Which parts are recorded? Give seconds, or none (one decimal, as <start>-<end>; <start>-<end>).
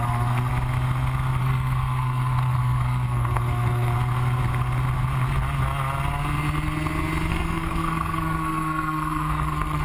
0.5-1.4; 3.9-7.3